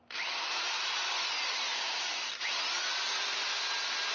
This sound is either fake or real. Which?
real